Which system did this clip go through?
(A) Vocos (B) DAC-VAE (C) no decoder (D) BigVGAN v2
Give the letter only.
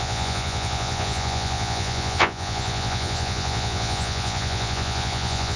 A